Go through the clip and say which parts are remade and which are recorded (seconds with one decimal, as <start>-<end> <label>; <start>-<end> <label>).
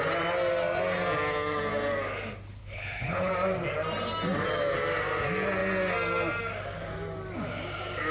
0.0-2.6 recorded; 2.6-3.3 remade; 3.3-8.1 recorded